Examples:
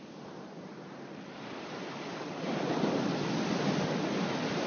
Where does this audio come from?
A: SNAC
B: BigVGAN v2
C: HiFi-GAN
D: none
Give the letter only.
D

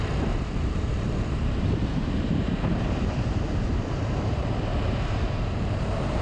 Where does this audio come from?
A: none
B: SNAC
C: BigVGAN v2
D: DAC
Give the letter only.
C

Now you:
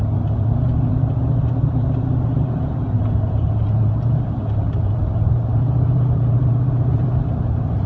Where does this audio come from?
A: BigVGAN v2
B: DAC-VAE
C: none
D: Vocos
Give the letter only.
A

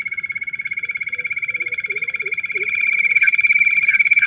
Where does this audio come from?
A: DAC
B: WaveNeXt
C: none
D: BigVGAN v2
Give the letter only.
D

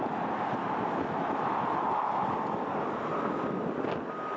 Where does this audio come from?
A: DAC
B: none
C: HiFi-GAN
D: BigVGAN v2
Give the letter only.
B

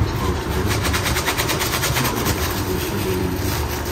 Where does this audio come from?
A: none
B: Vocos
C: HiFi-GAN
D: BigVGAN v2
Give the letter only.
D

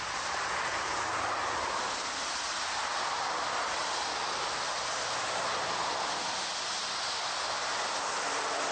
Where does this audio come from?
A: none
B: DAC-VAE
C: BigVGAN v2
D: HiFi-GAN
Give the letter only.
A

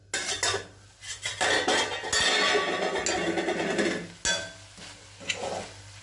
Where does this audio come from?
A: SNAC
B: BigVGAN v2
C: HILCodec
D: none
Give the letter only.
D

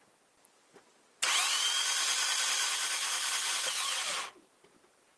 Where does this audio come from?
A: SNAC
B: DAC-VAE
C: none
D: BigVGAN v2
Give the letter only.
C